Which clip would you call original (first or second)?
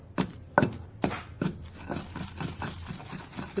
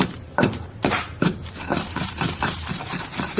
first